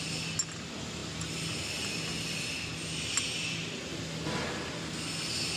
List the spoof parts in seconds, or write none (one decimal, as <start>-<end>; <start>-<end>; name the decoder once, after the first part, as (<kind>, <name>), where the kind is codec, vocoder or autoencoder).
none